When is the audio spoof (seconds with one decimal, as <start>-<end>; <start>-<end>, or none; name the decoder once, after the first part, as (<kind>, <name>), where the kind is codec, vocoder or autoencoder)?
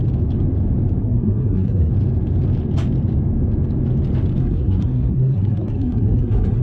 1.0-1.9 (codec, SNAC); 4.4-6.6